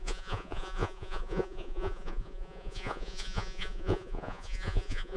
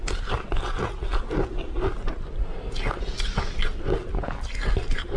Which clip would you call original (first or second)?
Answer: second